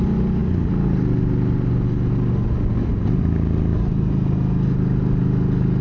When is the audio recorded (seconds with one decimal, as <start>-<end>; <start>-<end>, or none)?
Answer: 0.0-5.8